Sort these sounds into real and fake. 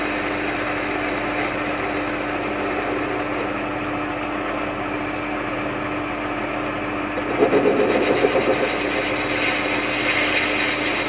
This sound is real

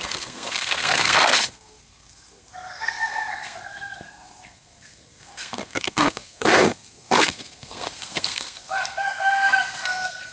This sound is fake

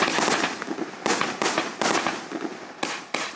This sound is real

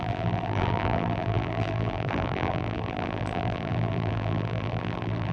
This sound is fake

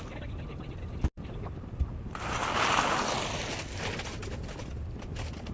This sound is real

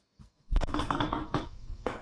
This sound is fake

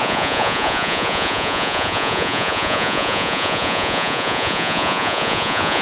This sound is fake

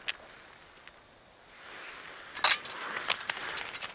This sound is real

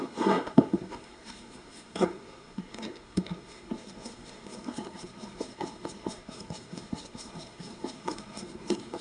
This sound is fake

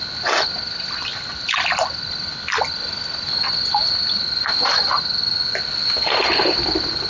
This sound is real